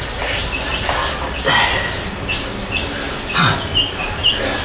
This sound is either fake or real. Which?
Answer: real